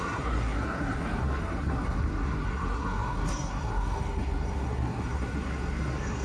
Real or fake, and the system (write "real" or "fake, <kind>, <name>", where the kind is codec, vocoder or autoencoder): fake, codec, SNAC